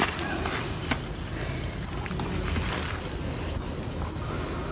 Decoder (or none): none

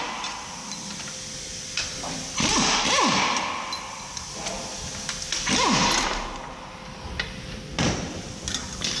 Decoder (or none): none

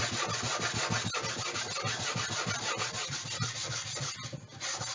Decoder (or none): none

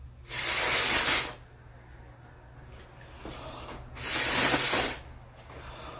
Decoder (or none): none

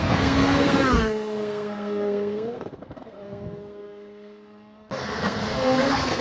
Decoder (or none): codec, SNAC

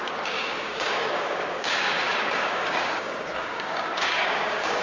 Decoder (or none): codec, DAC